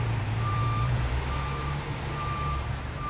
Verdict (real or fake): fake